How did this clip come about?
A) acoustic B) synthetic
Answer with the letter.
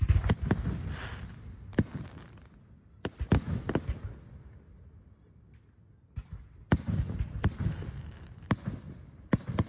A